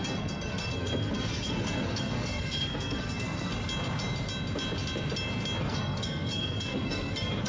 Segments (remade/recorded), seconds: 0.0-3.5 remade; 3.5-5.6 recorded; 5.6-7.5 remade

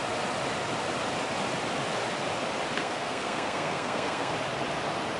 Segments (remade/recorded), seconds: 0.0-2.8 recorded; 2.8-4.3 remade; 4.3-5.2 recorded

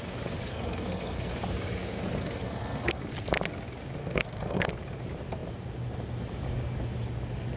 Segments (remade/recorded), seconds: 0.0-0.5 recorded; 0.5-1.3 remade; 1.3-2.2 recorded; 2.2-3.0 remade; 3.0-4.0 recorded; 4.0-4.7 remade; 4.7-7.6 recorded

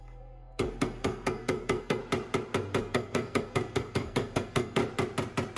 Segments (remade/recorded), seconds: 0.0-2.0 remade; 2.0-2.8 recorded; 2.8-4.8 remade; 4.8-5.6 recorded

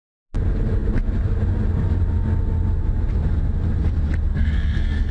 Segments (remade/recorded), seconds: 0.0-4.3 recorded; 4.3-5.1 remade